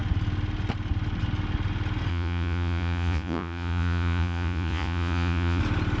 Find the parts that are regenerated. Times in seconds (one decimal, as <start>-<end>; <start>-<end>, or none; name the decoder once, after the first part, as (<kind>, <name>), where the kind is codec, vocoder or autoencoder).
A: 2.1-5.6 (vocoder, Vocos)

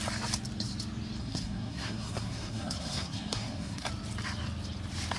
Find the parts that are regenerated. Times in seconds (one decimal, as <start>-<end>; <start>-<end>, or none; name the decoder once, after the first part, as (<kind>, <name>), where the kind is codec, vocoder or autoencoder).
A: 1.2-3.9 (codec, SNAC)

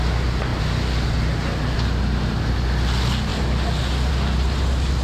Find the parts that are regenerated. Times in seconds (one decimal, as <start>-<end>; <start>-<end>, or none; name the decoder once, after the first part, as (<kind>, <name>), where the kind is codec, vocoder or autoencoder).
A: none

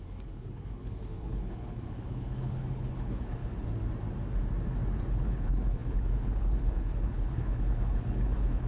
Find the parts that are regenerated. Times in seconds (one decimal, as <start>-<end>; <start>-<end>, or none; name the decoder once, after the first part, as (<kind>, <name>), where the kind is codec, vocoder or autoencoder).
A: 0.0-3.4 (codec, HILCodec); 5.1-8.7